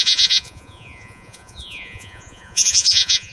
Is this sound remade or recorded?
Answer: remade